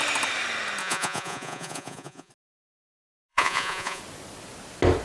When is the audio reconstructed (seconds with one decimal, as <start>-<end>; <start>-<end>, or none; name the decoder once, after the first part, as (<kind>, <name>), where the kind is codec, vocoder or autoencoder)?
0.8-2.3 (vocoder, Vocos); 3.3-4.0